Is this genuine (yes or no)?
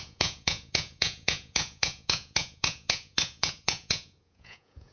no